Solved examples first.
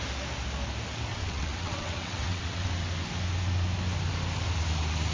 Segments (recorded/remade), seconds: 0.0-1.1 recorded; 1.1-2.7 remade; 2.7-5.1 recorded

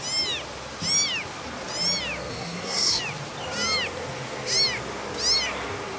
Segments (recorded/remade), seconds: 0.0-2.3 recorded; 2.3-3.0 remade; 3.0-6.0 recorded